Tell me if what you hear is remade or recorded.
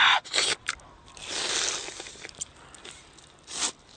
recorded